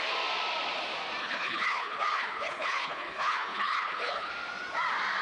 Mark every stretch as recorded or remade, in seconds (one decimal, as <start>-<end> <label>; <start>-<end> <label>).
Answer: 0.0-1.2 recorded; 1.2-4.3 remade; 4.3-5.2 recorded